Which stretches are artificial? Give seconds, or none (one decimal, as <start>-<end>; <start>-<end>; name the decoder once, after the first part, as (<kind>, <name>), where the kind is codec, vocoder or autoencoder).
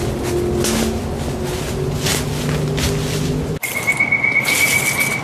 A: none